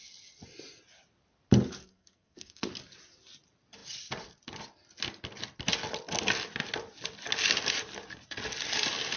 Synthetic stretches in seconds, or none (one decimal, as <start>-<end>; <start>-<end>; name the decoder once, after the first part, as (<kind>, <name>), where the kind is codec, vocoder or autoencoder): 1.8-2.7 (codec, SNAC)